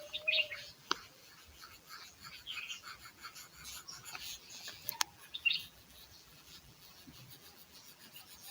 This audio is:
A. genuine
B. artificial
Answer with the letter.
B